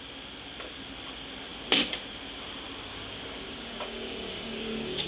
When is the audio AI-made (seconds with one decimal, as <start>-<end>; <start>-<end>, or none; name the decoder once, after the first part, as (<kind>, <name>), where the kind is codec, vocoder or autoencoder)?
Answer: 2.9-5.1 (codec, DAC)